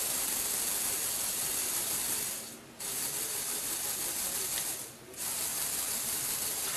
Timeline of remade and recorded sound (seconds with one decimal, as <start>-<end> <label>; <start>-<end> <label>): 0.0-1.6 remade; 1.6-4.6 recorded; 4.6-6.8 remade